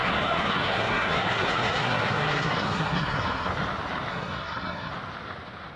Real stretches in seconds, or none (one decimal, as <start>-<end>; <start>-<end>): 3.5-4.1; 4.9-5.8